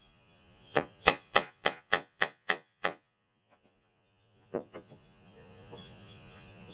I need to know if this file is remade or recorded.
remade